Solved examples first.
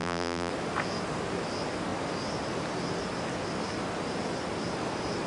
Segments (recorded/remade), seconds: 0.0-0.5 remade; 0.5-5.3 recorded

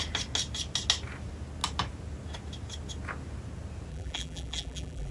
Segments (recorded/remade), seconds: 0.0-3.9 recorded; 3.9-5.1 remade

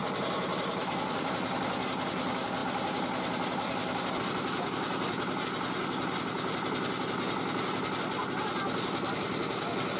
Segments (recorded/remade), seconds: 0.0-1.3 remade; 1.3-2.6 recorded; 2.6-5.4 remade; 5.4-10.0 recorded

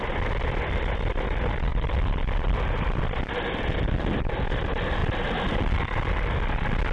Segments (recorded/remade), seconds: 0.0-1.7 recorded; 1.7-3.0 remade; 3.0-5.0 recorded; 5.0-6.1 remade; 6.1-6.9 recorded

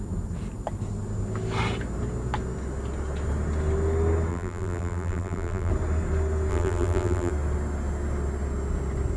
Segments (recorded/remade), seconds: 0.0-4.3 recorded; 4.3-5.7 remade; 5.7-6.5 recorded; 6.5-7.3 remade; 7.3-9.2 recorded

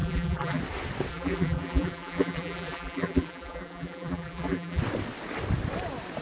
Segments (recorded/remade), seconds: 0.0-0.6 remade; 0.6-1.1 recorded; 1.1-4.8 remade; 4.8-6.2 recorded